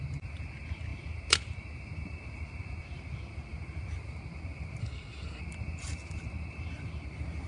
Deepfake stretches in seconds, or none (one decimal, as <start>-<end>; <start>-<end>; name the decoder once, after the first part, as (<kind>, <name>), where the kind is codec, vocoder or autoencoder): 4.8-5.4 (codec, SNAC)